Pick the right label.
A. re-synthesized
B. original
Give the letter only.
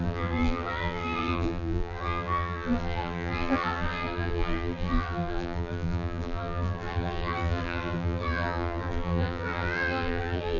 A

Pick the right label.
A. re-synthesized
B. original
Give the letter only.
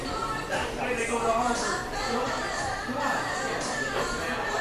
A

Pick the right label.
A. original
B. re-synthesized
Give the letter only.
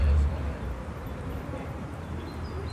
B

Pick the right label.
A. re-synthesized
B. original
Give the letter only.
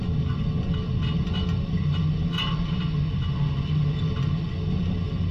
B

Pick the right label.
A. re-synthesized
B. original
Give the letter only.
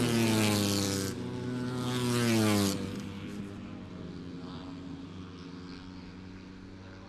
B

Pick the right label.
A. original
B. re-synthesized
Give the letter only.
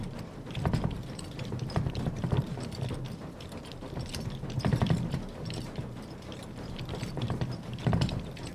B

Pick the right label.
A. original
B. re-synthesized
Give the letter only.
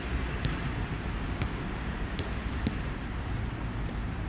B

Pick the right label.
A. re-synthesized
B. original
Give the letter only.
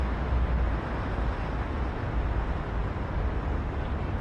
B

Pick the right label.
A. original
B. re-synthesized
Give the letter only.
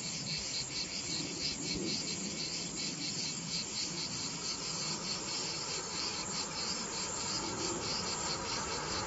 A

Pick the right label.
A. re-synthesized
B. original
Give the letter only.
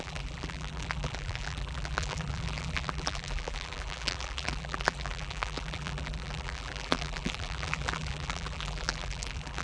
A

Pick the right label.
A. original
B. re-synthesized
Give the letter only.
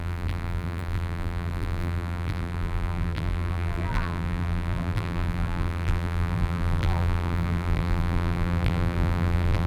B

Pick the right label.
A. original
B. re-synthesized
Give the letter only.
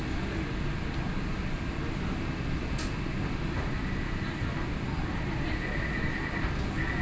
A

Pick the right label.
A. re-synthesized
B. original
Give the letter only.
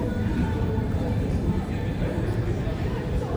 A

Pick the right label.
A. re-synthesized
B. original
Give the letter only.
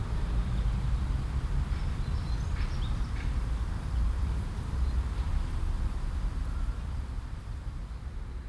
A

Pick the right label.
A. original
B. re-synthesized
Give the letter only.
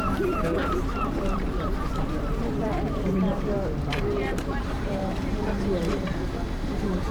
B